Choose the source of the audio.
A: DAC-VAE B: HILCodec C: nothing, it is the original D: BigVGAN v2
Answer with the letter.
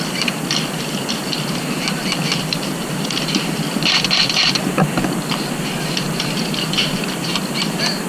D